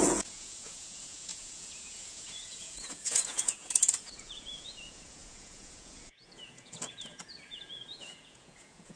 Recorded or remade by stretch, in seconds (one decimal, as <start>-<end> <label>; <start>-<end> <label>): 0.0-9.0 remade